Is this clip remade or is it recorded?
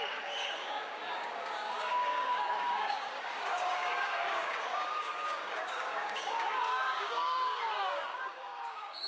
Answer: remade